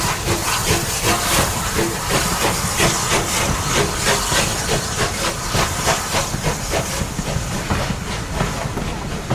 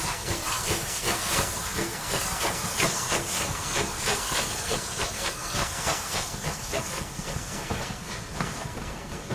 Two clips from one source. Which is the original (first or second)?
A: first